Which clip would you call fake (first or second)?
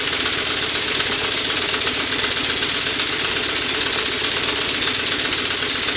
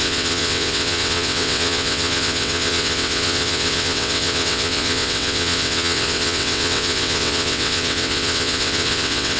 second